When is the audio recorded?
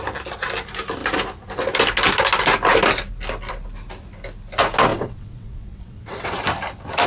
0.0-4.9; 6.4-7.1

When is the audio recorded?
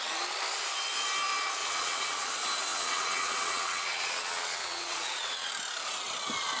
0.0-1.6; 2.3-2.7; 5.5-6.6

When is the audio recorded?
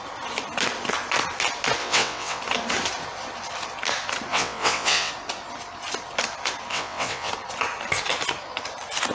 0.0-1.8; 2.4-4.3; 5.1-6.7; 7.3-9.1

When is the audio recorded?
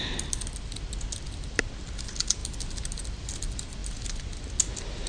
0.0-5.1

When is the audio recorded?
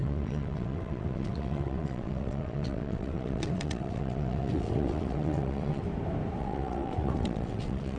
5.8-6.4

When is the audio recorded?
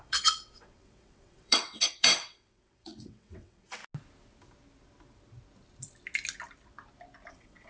3.8-7.3